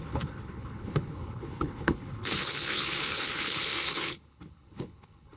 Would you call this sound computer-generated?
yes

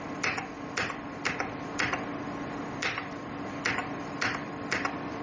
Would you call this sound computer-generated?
no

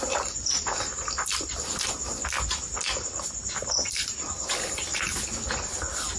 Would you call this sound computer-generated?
no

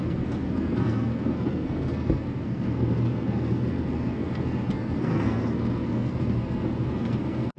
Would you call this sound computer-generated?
yes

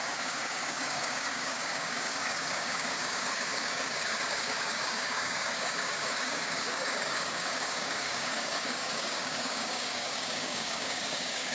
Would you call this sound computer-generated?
yes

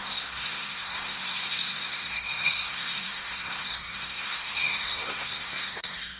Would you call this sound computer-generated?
yes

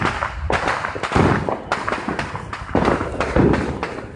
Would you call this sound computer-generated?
no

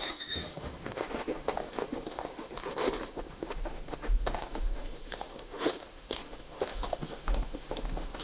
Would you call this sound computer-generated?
yes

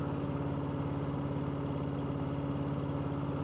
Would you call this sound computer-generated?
no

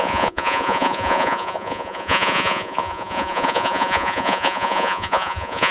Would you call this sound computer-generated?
yes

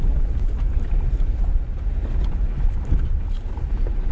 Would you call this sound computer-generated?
yes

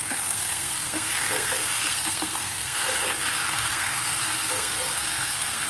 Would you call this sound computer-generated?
yes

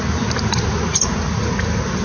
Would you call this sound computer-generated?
no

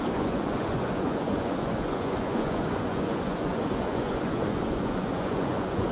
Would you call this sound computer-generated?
yes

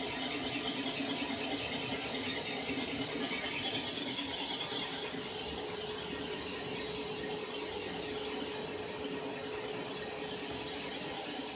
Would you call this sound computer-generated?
no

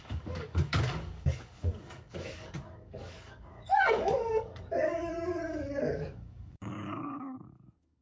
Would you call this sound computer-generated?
yes